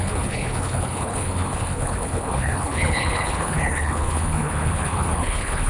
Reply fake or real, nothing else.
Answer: fake